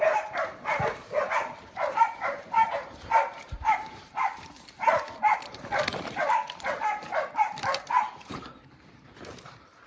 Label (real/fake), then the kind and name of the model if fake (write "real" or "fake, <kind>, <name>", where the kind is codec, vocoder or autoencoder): fake, vocoder, BigVGAN v2